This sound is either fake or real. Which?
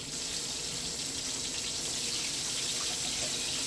real